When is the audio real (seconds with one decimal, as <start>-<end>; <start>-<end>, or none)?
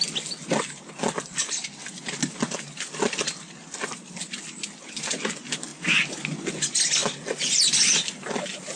0.0-8.8